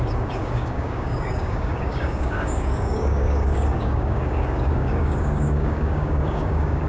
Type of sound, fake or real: fake